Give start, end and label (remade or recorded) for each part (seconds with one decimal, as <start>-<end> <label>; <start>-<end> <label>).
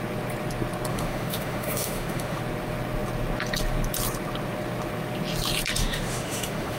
0.0-0.9 recorded; 0.9-2.4 remade; 2.4-5.8 recorded; 5.8-6.8 remade